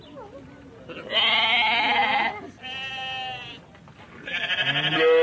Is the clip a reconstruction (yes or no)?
no